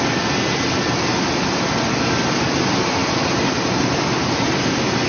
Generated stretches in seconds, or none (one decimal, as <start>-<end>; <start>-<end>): none